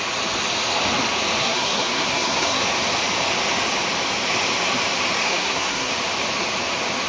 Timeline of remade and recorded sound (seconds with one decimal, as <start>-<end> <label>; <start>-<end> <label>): 0.0-1.4 recorded; 1.4-2.6 remade; 2.6-5.2 recorded; 5.2-5.9 remade; 5.9-7.1 recorded